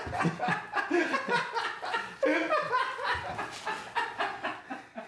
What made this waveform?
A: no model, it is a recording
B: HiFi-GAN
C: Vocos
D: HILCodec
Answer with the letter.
A